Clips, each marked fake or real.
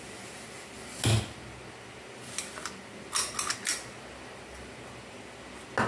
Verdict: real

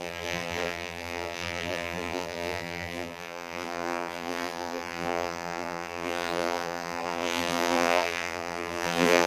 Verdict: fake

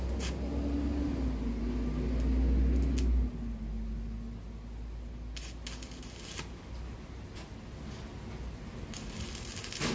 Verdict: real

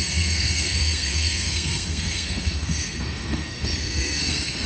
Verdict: fake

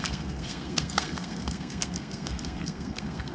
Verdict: fake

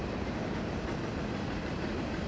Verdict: real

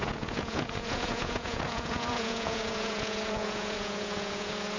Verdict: fake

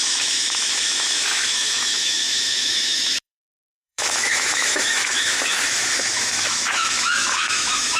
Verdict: fake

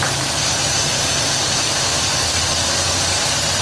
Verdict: real